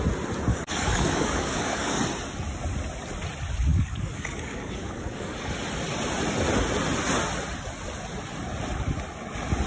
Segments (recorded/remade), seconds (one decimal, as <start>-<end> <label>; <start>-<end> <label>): 0.0-0.5 recorded; 0.5-2.0 remade; 2.0-3.7 recorded; 3.7-5.5 remade; 5.5-9.7 recorded